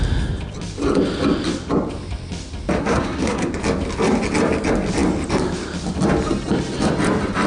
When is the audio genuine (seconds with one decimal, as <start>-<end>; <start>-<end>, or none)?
0.0-2.8; 3.5-7.5